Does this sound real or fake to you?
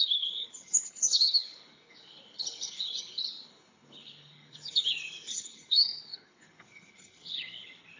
fake